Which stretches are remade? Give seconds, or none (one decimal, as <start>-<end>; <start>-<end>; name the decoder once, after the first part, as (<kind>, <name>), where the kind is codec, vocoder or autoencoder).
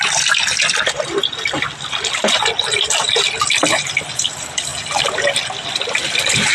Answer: none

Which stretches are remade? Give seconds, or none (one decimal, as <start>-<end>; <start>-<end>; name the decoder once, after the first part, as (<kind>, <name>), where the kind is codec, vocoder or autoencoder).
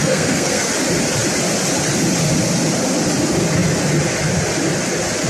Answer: 0.0-0.7 (codec, SNAC)